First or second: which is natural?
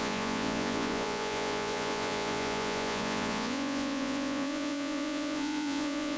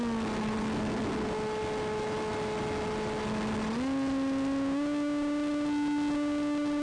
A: second